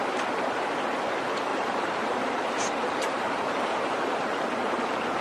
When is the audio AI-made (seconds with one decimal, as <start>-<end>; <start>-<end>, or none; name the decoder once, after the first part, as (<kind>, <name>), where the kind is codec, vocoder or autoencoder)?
1.5-4.4 (vocoder, BigVGAN v2)